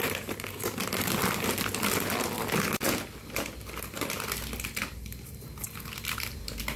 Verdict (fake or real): real